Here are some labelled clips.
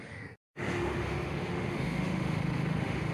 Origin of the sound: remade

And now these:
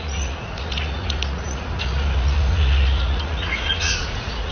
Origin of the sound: remade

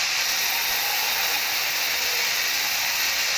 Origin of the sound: recorded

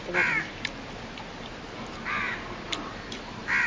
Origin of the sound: remade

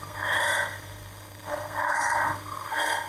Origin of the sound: remade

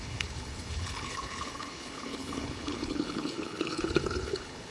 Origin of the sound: remade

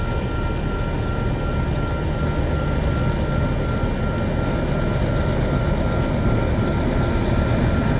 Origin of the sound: recorded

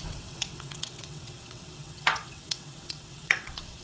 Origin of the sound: remade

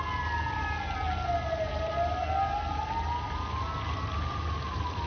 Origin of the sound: recorded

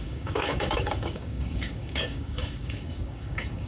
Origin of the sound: remade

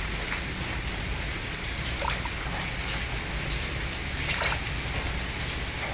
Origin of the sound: recorded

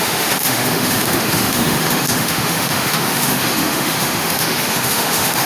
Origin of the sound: remade